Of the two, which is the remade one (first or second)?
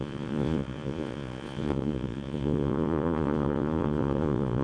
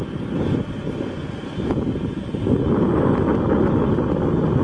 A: first